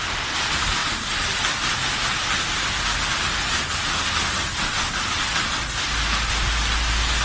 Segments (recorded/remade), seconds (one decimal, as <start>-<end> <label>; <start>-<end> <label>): 0.0-7.2 recorded